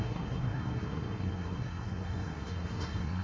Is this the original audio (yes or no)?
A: no